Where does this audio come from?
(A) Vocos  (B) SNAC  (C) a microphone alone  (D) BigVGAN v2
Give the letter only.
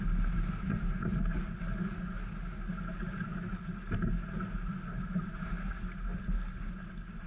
C